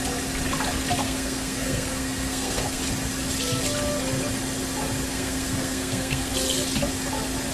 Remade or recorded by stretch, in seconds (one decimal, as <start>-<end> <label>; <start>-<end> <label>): 0.0-1.0 recorded; 1.0-2.8 remade; 2.8-5.1 recorded; 5.1-6.3 remade; 6.3-7.5 recorded